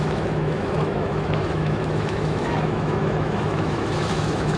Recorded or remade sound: remade